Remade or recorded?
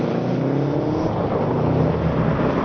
recorded